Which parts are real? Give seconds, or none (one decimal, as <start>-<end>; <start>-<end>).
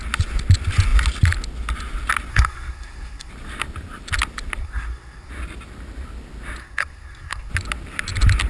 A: 0.0-2.3; 3.3-4.6; 5.3-6.6; 7.5-8.5